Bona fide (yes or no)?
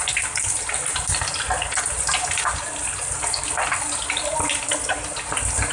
yes